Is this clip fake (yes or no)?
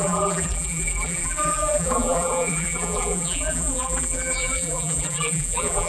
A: yes